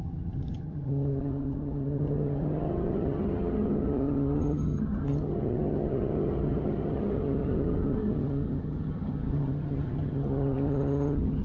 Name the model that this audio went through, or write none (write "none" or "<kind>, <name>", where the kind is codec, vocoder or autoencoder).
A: vocoder, HiFi-GAN